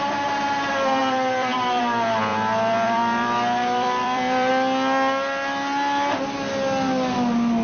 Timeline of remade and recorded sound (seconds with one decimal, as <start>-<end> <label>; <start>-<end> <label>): 0.0-1.0 recorded; 1.0-1.8 remade; 1.8-2.3 recorded; 2.3-4.5 remade; 4.5-7.6 recorded

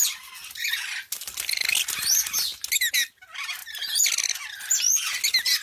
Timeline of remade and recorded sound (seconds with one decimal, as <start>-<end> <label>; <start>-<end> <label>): 0.0-5.6 recorded